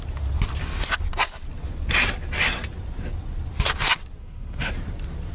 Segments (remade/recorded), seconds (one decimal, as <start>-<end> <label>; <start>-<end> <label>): 0.0-4.2 recorded; 4.2-4.7 remade; 4.7-5.3 recorded